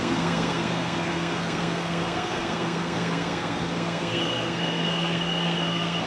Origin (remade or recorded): remade